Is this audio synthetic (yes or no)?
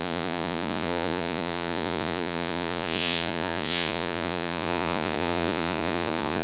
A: yes